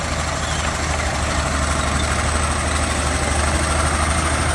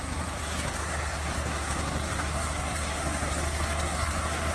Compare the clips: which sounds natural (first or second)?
first